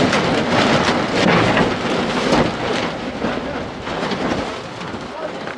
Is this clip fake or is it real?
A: real